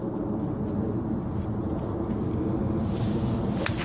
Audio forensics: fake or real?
real